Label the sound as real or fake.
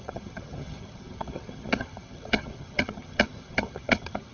fake